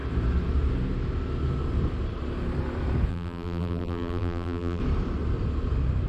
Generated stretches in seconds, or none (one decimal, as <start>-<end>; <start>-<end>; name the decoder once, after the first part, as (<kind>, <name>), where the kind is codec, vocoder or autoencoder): 3.1-4.8 (vocoder, BigVGAN v2)